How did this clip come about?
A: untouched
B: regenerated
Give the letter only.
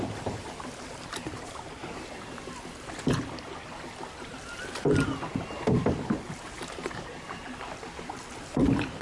A